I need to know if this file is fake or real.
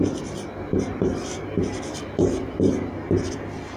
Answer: real